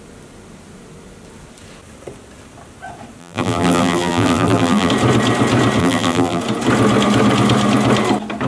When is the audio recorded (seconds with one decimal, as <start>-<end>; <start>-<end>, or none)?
0.0-3.2; 4.9-5.8; 6.4-8.5